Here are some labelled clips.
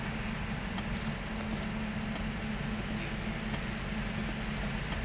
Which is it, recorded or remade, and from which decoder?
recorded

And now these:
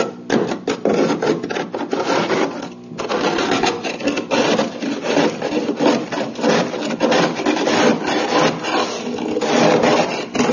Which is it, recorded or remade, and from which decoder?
recorded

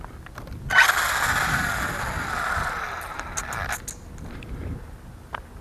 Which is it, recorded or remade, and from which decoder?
recorded